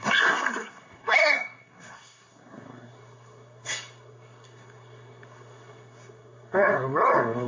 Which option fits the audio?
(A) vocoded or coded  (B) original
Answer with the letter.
A